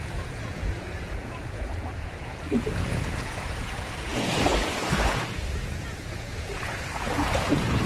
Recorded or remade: remade